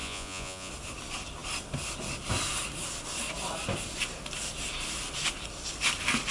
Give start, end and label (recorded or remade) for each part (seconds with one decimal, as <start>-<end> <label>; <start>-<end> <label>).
0.0-0.7 remade; 0.7-6.3 recorded